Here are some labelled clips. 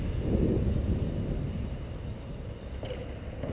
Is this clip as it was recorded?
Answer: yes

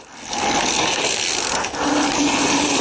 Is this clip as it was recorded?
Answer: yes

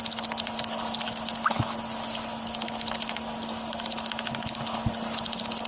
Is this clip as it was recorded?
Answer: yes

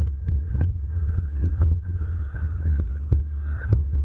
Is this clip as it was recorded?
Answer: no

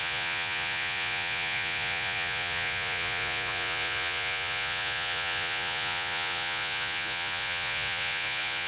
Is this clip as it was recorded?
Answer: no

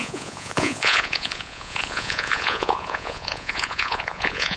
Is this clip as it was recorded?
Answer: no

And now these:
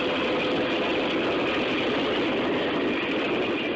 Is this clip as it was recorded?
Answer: yes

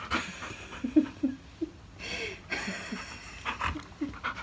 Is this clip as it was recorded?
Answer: yes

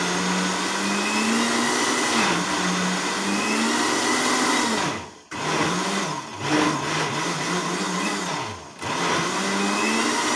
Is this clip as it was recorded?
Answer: yes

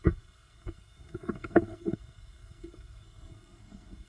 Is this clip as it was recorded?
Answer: no